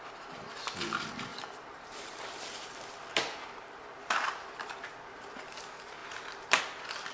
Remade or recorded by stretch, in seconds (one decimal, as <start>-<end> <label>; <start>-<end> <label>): 0.0-1.3 recorded; 1.3-5.6 remade; 5.6-6.0 recorded; 6.0-6.6 remade; 6.6-7.1 recorded

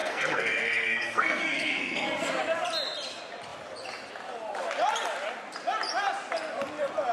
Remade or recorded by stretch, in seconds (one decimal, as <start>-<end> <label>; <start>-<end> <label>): 0.0-2.4 remade; 2.4-7.1 recorded

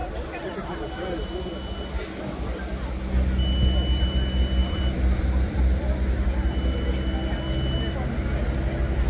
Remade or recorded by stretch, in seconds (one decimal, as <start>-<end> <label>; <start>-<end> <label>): 0.0-4.6 recorded; 4.6-5.6 remade; 5.6-9.1 recorded

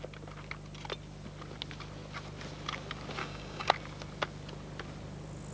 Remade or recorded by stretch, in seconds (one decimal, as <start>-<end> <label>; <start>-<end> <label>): 0.0-3.2 recorded; 3.2-3.7 remade; 3.7-5.5 recorded

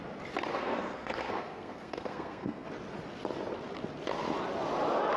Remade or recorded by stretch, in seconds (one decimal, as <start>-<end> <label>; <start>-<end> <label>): 0.0-0.5 recorded; 0.5-2.7 remade; 2.7-5.2 recorded

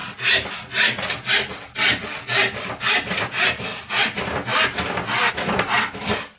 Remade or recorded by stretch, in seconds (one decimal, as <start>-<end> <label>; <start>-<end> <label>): 0.0-6.4 recorded

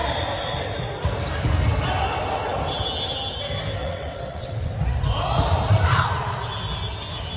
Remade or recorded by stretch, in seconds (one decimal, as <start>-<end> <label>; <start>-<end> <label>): 0.0-3.8 recorded; 3.8-4.7 remade; 4.7-7.4 recorded